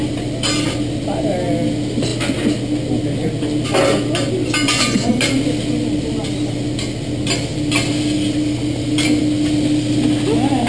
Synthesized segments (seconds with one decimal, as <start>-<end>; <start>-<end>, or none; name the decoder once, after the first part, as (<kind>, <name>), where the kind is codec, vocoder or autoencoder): 4.6-5.1 (vocoder, Vocos)